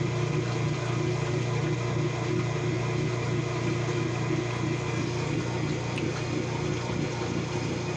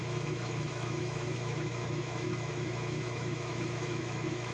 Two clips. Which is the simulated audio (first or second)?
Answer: second